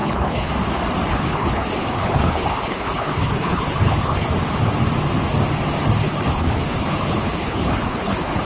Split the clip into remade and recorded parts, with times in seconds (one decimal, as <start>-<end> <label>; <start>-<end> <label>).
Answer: 0.0-0.5 remade; 0.5-1.1 recorded; 1.1-4.3 remade; 4.3-6.0 recorded; 6.0-8.4 remade